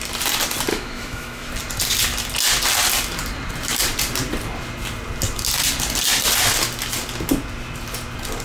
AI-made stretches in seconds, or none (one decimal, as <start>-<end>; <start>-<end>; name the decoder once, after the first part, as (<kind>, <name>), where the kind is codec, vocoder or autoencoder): 0.7-1.5 (autoencoder, DAC-VAE)